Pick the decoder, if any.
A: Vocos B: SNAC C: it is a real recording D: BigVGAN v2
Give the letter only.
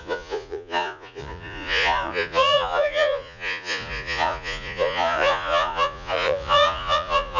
A